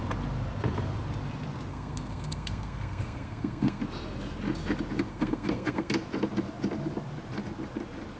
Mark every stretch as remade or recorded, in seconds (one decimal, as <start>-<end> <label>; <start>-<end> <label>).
0.0-1.7 recorded; 1.7-3.8 remade; 3.8-5.1 recorded; 5.1-5.9 remade; 5.9-8.2 recorded